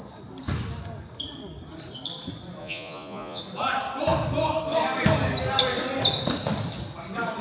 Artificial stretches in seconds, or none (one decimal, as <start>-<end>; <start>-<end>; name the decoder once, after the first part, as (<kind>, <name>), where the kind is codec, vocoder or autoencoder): 2.6-3.4 (vocoder, Vocos)